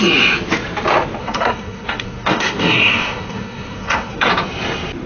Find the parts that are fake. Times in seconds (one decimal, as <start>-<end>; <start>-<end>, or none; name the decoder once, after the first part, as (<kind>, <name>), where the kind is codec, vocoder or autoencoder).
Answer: 1.2-4.3 (codec, SNAC)